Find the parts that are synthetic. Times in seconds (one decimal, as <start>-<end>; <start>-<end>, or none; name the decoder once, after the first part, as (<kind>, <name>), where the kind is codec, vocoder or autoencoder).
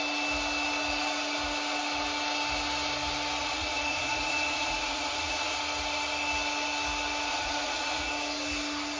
3.4-5.6 (vocoder, Vocos); 7.3-8.1